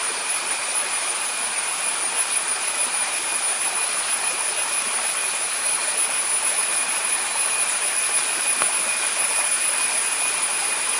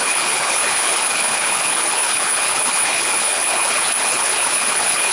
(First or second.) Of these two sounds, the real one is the first